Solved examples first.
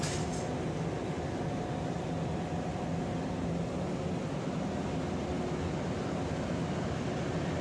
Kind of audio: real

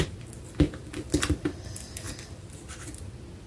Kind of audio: real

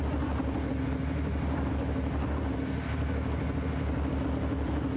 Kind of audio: real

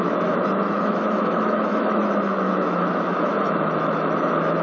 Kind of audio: fake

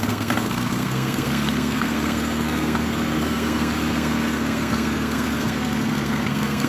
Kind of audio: fake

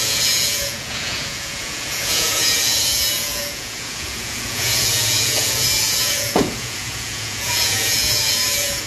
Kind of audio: fake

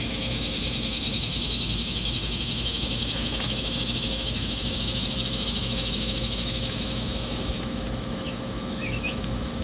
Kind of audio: fake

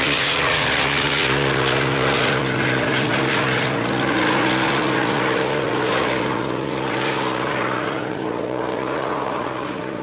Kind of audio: fake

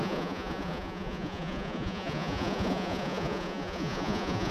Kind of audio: fake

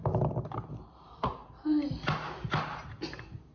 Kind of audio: real